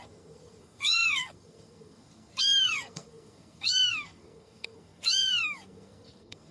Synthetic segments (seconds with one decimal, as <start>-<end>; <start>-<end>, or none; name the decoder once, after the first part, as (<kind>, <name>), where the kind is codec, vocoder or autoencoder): 0.0-6.5 (codec, SNAC)